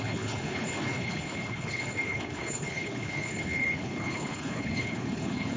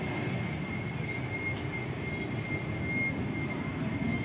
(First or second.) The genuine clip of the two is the second